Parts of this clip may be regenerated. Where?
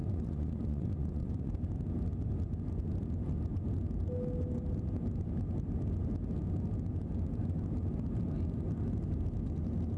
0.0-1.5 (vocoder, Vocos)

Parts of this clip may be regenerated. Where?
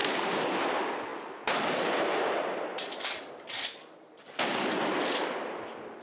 none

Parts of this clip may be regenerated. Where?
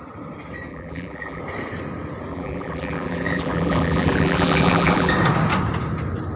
0.7-1.4 (vocoder, BigVGAN v2); 2.3-5.1